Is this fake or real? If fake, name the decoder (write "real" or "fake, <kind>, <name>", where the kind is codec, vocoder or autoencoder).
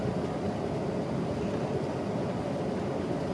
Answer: real